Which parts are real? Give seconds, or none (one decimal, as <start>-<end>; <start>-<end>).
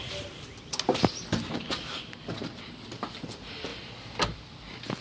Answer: 0.0-5.0